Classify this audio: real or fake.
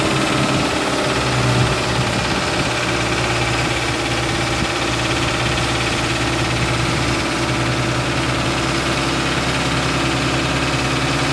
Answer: real